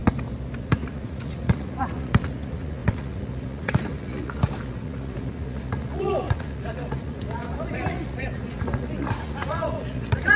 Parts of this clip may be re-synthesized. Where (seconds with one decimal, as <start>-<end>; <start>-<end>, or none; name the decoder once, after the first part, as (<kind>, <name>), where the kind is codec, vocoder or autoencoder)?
0.6-10.4 (vocoder, Vocos)

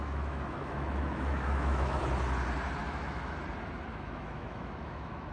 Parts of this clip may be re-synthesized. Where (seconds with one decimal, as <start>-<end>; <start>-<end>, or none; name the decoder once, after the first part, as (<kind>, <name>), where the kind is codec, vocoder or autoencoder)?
0.0-2.0 (autoencoder, DAC-VAE); 2.8-3.4; 3.9-5.3

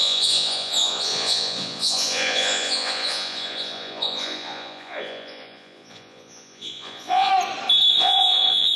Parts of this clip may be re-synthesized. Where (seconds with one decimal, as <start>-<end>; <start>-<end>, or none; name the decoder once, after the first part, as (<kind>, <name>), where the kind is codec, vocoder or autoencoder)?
0.0-7.3 (vocoder, Vocos); 7.9-8.8

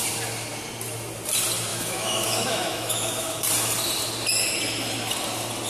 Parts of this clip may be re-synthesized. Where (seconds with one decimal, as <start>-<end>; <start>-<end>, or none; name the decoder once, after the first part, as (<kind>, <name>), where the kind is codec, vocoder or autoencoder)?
1.7-3.4 (autoencoder, DAC-VAE)

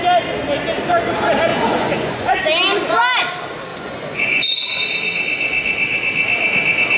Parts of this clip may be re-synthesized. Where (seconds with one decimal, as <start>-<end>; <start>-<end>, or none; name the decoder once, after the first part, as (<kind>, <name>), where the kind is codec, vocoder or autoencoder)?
1.5-2.3 (vocoder, Vocos); 3.7-4.8

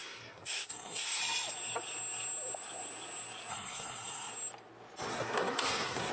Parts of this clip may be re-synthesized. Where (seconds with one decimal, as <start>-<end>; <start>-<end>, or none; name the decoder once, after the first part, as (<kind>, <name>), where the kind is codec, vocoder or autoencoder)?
0.0-1.2 (codec, SNAC); 3.5-4.3; 5.1-6.1